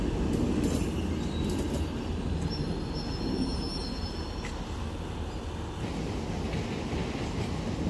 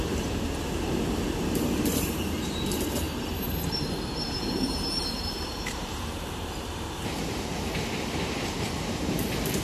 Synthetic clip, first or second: second